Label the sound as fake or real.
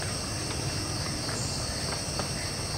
real